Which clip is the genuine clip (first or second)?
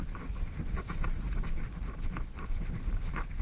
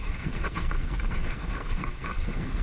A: first